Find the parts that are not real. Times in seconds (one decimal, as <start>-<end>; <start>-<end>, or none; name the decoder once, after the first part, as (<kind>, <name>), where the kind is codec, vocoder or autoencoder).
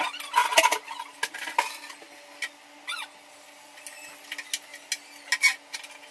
none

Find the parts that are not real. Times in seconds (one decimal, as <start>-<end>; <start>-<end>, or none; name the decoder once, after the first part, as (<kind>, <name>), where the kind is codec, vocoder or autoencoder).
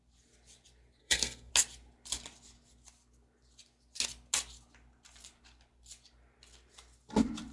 1.0-1.5 (codec, SNAC)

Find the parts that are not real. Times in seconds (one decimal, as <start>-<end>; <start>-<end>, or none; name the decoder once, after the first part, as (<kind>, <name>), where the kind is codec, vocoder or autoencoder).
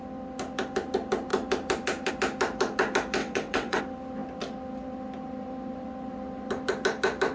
3.2-3.8 (vocoder, WaveNeXt)